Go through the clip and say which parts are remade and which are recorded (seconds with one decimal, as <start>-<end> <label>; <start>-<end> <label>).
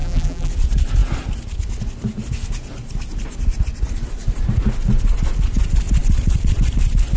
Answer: 0.0-0.5 remade; 0.5-7.2 recorded